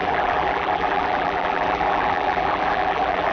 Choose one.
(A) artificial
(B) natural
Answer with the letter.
A